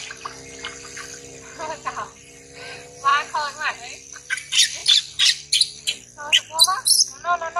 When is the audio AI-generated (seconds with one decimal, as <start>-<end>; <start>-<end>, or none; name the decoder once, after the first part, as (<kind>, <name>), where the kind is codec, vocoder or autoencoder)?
4.8-6.4 (vocoder, BigVGAN v2)

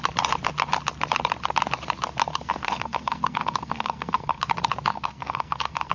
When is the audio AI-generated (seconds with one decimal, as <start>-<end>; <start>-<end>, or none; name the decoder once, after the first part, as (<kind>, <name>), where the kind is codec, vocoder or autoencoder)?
2.3-4.4 (codec, SNAC); 4.9-5.9

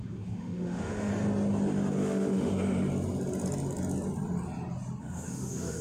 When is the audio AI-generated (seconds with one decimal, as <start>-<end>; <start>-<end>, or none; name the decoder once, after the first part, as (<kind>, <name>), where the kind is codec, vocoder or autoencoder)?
0.0-1.1 (autoencoder, DAC-VAE); 1.9-2.5; 5.0-5.8

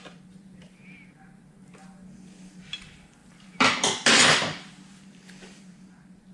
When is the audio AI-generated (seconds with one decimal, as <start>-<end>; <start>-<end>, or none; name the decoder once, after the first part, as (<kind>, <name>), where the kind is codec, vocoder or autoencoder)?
0.0-0.8 (vocoder, BigVGAN v2); 2.8-6.3

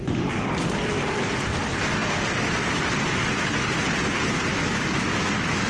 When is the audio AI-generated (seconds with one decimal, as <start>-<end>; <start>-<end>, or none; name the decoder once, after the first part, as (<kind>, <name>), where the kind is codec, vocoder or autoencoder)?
4.5-5.7 (autoencoder, DAC-VAE)

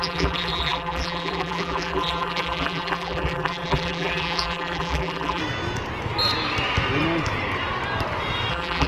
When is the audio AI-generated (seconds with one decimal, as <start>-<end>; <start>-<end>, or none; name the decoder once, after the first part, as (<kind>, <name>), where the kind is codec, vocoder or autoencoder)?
0.0-5.4 (vocoder, BigVGAN v2); 8.5-8.9

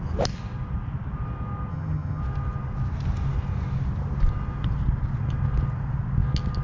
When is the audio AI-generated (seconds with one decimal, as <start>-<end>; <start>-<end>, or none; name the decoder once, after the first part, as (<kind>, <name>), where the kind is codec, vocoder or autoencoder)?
1.7-2.2 (vocoder, HiFi-GAN)

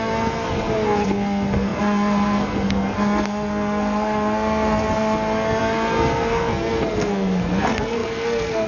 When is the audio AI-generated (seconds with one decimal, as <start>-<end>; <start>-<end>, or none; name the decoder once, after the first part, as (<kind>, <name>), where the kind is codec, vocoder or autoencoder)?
0.0-8.7 (codec, SNAC)